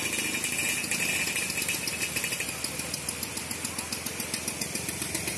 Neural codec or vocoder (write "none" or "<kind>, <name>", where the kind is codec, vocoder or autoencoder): none